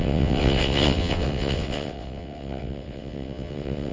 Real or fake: fake